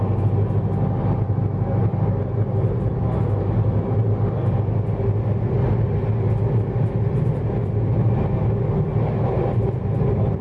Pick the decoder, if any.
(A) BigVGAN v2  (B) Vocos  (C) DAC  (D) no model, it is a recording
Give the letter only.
D